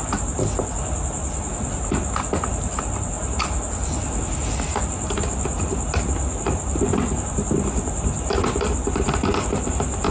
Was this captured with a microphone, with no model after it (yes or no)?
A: yes